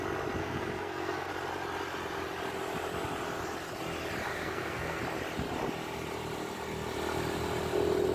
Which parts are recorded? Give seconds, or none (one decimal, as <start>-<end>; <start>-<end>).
0.0-0.4; 1.3-4.3; 5.0-8.1